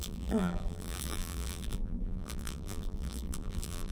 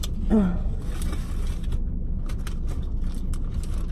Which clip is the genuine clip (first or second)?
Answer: second